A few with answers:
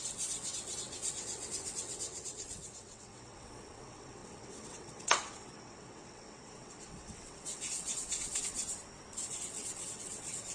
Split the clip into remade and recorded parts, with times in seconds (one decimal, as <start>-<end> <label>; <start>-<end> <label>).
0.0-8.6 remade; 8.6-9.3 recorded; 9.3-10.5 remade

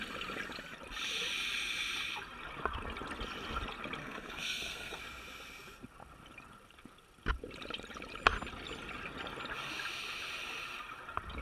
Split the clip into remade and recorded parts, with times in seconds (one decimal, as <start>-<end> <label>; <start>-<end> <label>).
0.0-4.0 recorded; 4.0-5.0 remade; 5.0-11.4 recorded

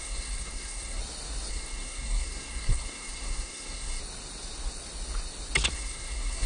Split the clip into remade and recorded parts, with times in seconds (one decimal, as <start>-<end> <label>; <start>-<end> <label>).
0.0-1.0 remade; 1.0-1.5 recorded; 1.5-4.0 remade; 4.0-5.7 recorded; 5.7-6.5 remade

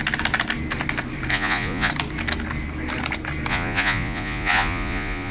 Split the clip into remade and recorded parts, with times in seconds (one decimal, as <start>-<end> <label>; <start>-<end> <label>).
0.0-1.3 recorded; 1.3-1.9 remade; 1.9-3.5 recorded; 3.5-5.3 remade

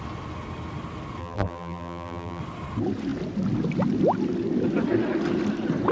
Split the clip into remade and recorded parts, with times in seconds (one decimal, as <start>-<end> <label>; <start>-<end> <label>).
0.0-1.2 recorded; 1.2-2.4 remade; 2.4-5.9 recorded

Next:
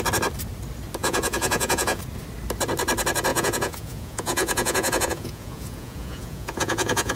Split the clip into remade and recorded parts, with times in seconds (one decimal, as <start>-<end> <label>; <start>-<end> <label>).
0.0-1.0 recorded; 1.0-2.0 remade; 2.0-3.3 recorded; 3.3-7.2 remade

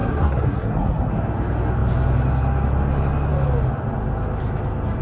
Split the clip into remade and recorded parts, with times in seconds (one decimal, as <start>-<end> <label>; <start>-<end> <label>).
0.0-1.1 remade; 1.1-5.0 recorded